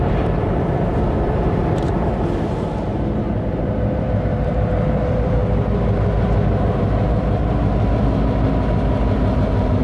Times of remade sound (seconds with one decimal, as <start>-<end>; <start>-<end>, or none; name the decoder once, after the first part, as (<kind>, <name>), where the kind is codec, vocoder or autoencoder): 0.0-5.4 (vocoder, BigVGAN v2); 6.7-7.4; 9.3-9.8